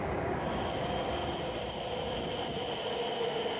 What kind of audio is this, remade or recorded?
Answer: recorded